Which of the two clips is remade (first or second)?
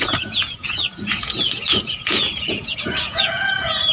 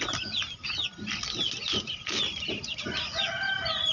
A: first